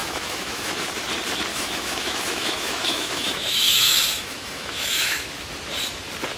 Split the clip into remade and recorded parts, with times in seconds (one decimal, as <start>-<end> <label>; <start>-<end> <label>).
0.0-0.8 remade; 0.8-1.5 recorded; 1.5-5.3 remade; 5.3-6.4 recorded